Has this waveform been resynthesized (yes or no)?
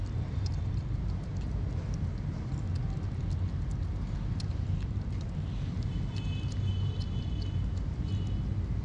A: no